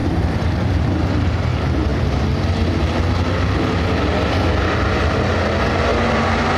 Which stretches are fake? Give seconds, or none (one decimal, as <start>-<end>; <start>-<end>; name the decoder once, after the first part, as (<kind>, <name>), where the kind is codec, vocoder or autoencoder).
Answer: 0.0-1.4 (vocoder, BigVGAN v2)